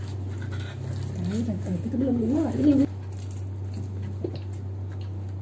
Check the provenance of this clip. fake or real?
real